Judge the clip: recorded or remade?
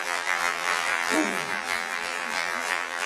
remade